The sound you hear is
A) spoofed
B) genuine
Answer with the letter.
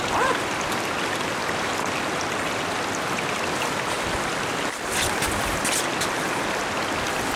B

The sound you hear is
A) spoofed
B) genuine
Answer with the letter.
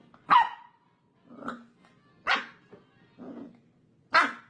B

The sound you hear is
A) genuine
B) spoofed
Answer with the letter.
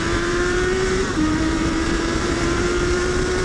B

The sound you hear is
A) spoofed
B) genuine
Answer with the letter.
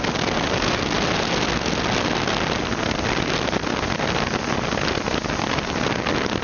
B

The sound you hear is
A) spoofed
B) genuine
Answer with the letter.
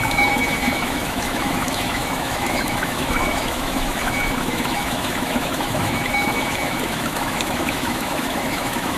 A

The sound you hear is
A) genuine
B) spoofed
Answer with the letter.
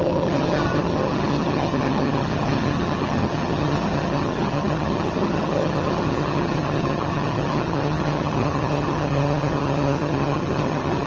B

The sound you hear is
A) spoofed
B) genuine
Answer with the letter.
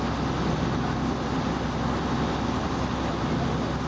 B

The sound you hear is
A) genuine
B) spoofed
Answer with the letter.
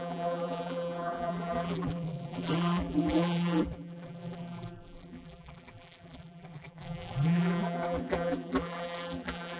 B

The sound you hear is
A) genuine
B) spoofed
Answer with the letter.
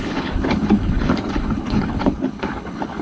B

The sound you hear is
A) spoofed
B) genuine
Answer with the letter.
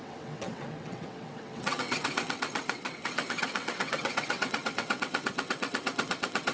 A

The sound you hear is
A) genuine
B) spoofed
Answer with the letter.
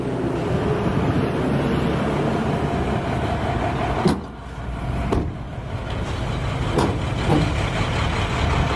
A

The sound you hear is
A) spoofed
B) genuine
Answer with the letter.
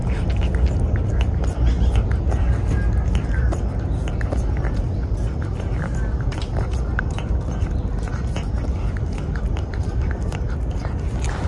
B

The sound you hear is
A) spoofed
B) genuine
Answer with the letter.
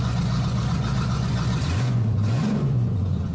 A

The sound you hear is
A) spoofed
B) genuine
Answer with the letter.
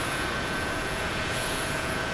A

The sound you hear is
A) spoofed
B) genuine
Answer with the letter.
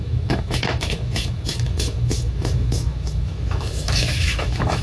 A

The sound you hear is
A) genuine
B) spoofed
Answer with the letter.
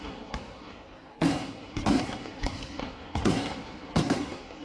B